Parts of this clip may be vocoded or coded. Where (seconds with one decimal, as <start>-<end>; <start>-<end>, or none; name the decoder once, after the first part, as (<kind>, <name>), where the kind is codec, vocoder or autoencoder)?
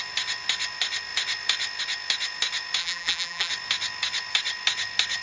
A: 2.8-3.5 (vocoder, BigVGAN v2)